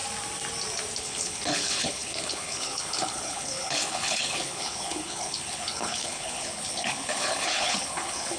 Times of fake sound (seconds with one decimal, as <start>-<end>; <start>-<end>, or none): 1.0-8.4